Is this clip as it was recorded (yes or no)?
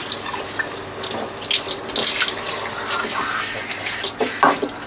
yes